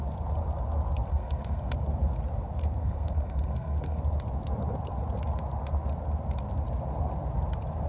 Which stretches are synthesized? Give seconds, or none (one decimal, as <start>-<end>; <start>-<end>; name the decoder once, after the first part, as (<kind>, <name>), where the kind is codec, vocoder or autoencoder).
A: 1.1-1.7 (codec, SNAC); 2.8-4.0